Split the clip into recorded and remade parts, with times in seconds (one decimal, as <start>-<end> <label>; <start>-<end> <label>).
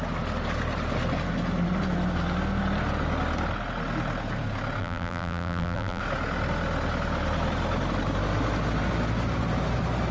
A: 0.0-4.8 recorded; 4.8-6.0 remade; 6.0-10.1 recorded